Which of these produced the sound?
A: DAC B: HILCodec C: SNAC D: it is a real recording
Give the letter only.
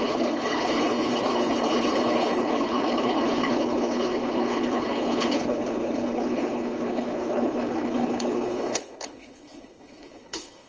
B